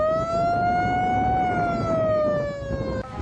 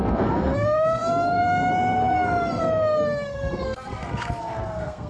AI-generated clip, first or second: second